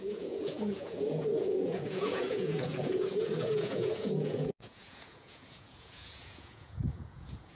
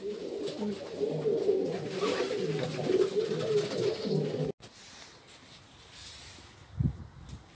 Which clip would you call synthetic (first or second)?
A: first